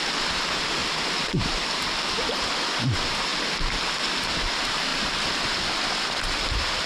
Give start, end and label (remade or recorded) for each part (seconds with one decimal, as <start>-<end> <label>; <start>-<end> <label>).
0.0-6.9 recorded